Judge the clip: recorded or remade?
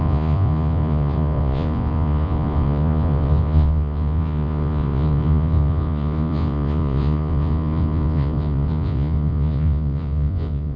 remade